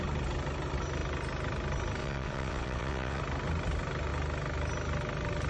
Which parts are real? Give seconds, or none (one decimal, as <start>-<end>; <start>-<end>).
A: 0.0-2.0; 3.2-5.5